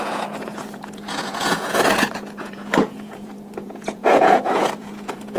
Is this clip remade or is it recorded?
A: remade